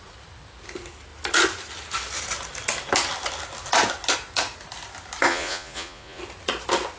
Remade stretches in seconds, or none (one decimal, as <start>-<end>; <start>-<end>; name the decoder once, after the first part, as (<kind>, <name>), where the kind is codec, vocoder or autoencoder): 5.3-6.2 (vocoder, Vocos)